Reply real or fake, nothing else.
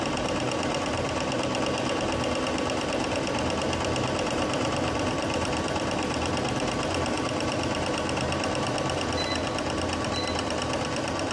fake